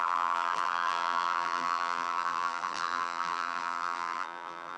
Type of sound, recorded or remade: remade